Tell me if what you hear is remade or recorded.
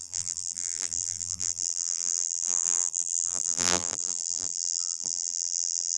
remade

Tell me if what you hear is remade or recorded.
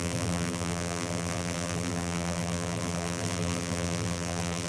remade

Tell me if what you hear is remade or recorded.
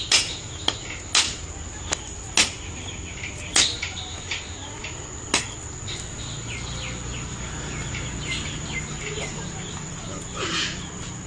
recorded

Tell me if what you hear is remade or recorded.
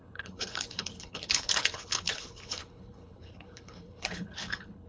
remade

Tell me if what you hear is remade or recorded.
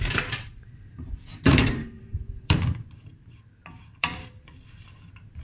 remade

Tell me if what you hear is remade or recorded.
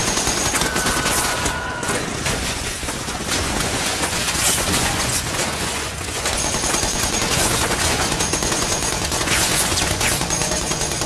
remade